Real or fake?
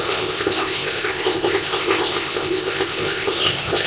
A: fake